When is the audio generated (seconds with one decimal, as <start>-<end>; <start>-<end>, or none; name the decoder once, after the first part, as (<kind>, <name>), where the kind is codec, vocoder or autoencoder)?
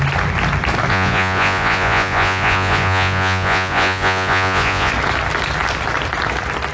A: 0.9-4.9 (vocoder, Vocos)